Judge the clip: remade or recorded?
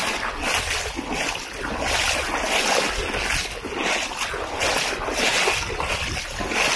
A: recorded